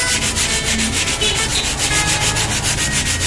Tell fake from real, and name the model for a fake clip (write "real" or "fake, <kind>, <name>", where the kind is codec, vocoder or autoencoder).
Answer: real